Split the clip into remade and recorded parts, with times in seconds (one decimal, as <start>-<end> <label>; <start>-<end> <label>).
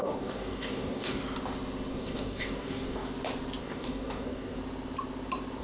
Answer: 0.0-1.2 remade; 1.2-1.9 recorded; 1.9-3.0 remade; 3.0-3.6 recorded; 3.6-4.6 remade; 4.6-5.6 recorded